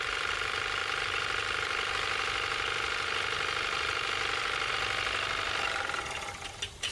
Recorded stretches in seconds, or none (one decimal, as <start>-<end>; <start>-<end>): 0.0-6.9